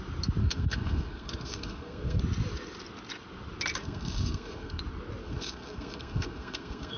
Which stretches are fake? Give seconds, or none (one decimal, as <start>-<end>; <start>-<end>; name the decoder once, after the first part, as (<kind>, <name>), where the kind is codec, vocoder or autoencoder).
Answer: 0.4-2.2 (codec, SNAC); 3.8-4.8; 5.2-7.0